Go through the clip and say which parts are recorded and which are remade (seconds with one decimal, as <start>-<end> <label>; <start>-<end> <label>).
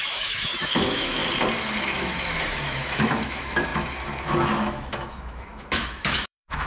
0.0-1.2 remade; 1.2-1.8 recorded; 1.8-6.7 remade